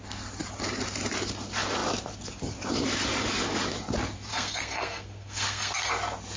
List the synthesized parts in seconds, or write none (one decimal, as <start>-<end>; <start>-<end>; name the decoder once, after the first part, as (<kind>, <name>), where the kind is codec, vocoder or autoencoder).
4.3-5.9 (codec, SNAC)